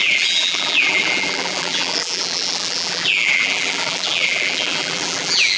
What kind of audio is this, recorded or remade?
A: remade